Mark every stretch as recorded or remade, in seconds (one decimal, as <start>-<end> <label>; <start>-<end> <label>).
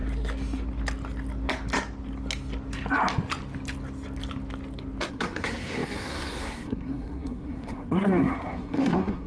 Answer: 0.0-5.1 recorded; 5.1-9.3 remade